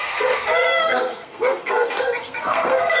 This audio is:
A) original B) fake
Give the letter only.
B